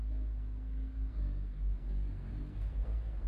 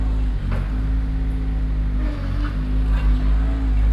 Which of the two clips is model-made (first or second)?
first